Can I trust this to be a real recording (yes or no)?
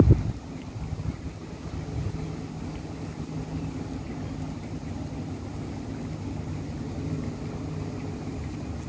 yes